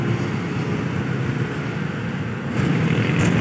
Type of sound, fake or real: real